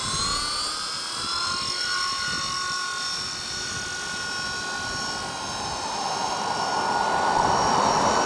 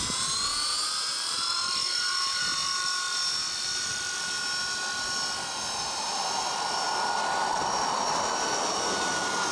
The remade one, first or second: second